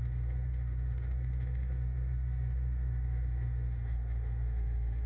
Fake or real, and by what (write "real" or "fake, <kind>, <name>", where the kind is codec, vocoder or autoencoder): fake, autoencoder, DAC-VAE